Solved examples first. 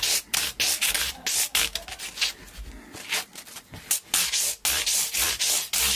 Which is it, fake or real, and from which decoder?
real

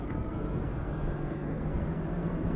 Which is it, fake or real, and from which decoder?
fake, codec, SNAC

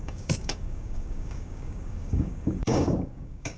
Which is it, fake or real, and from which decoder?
fake, codec, DAC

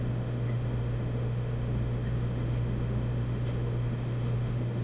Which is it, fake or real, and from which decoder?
fake, autoencoder, DAC-VAE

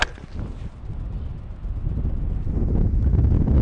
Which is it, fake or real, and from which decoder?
real